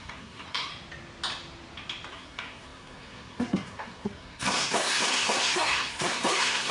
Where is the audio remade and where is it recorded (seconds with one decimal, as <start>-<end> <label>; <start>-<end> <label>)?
0.0-0.7 remade; 0.7-2.1 recorded; 2.1-6.7 remade